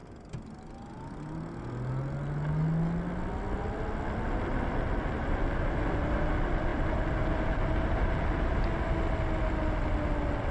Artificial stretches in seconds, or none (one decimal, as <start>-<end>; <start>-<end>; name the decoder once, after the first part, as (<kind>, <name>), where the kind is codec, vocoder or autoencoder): none